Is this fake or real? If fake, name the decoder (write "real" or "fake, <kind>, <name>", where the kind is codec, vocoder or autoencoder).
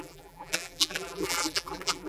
fake, vocoder, BigVGAN v2